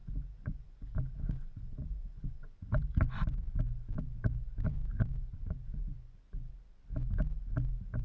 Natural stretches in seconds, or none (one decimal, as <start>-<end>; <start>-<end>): 3.6-4.7; 6.5-8.0